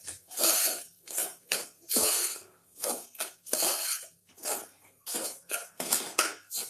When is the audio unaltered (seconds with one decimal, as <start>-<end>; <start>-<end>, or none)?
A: none